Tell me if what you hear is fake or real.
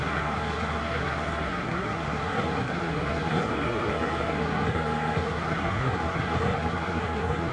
fake